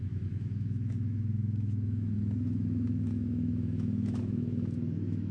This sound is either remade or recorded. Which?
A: remade